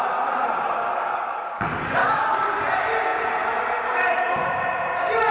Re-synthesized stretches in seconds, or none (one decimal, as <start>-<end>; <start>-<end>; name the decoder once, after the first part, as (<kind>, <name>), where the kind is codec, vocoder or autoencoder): 0.9-1.6 (codec, DAC); 2.0-2.5